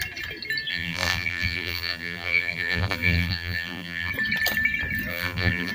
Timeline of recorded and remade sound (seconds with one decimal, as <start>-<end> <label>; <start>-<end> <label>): 0.0-0.7 recorded; 0.7-4.1 remade; 4.1-5.1 recorded; 5.1-5.7 remade